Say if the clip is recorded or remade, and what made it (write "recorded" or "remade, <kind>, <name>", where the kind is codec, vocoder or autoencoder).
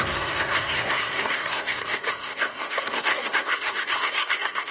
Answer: remade, codec, SNAC